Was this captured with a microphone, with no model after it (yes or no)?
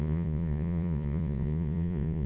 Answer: no